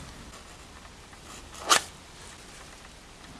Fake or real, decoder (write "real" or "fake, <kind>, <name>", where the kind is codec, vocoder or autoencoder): fake, vocoder, BigVGAN v2